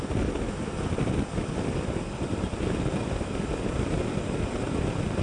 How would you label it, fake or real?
real